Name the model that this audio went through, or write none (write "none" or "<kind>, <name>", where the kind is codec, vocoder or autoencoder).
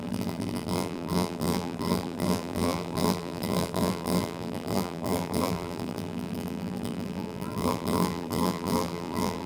vocoder, BigVGAN v2